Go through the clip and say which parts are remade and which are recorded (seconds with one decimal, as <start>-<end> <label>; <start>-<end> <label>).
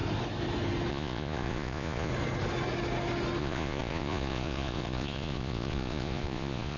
0.0-0.9 recorded; 0.9-2.1 remade; 2.1-3.4 recorded; 3.4-6.8 remade